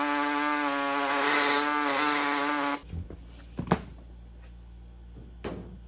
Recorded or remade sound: recorded